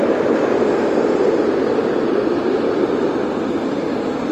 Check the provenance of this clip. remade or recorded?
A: recorded